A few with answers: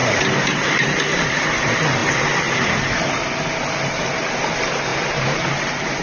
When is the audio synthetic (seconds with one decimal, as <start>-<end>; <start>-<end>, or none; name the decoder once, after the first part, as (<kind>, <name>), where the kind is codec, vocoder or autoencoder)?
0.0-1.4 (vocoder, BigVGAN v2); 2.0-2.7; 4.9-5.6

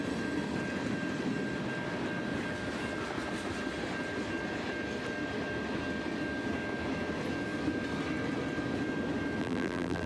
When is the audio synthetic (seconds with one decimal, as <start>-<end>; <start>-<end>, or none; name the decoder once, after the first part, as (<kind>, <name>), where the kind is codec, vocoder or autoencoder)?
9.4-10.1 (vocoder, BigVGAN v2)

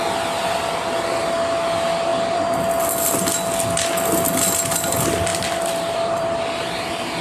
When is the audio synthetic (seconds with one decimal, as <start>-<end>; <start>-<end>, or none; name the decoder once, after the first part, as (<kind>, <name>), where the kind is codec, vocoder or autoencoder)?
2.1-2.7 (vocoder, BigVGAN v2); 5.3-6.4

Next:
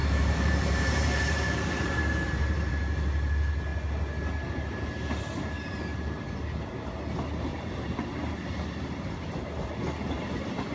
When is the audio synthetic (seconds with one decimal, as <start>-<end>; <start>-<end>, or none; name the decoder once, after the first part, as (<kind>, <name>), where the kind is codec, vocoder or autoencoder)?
0.0-2.7 (vocoder, BigVGAN v2); 7.5-8.3

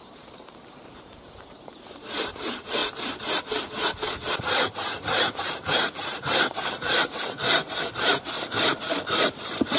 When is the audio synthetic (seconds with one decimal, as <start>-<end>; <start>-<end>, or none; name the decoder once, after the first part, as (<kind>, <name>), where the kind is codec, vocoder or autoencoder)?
0.0-2.8 (vocoder, BigVGAN v2); 4.4-9.8

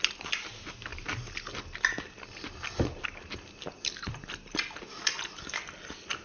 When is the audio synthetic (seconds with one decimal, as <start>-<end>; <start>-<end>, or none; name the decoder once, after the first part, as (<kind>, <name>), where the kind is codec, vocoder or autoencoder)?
none